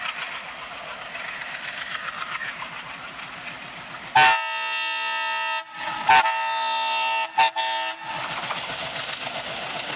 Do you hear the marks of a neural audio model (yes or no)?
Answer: no